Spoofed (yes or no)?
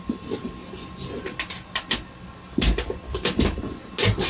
no